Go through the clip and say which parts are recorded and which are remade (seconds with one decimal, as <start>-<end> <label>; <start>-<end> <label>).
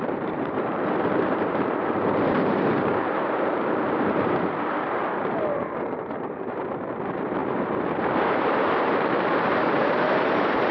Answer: 0.0-5.0 remade; 5.0-6.7 recorded; 6.7-10.7 remade